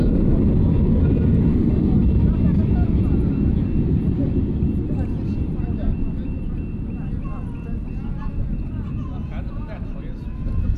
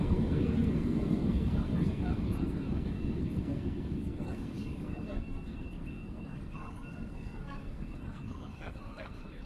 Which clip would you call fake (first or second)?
second